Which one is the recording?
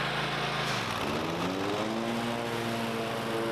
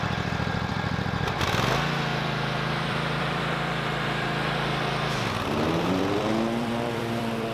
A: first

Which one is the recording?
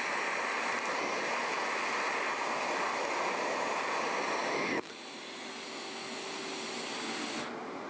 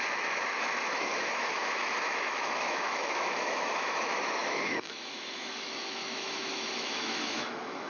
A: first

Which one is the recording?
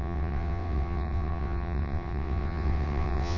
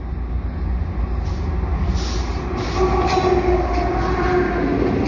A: second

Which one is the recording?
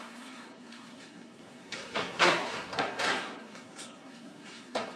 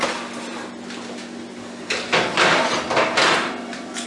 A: second